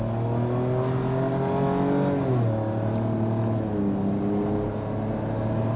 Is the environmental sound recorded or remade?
recorded